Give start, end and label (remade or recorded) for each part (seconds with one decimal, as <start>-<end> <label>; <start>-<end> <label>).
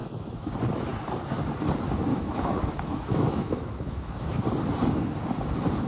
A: 0.0-0.5 remade; 0.5-2.1 recorded; 2.1-4.4 remade; 4.4-5.9 recorded